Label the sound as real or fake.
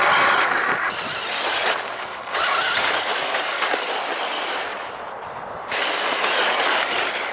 real